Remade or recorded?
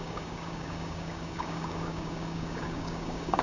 remade